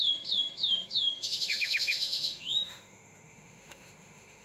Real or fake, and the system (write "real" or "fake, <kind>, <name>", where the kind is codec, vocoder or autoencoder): fake, autoencoder, DAC-VAE